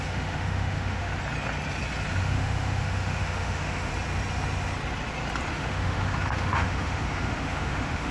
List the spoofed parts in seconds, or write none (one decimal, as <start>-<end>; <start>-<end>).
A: 0.0-1.1; 2.2-3.9; 5.5-8.1